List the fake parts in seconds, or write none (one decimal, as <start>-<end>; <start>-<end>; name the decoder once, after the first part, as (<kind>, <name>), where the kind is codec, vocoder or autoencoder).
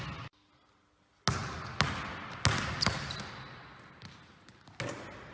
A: none